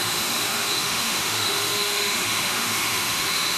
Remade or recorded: remade